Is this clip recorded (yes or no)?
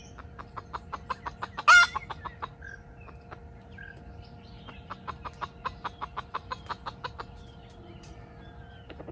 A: yes